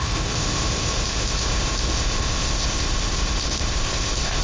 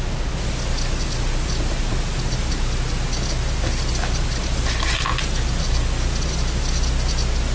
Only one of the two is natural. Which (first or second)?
second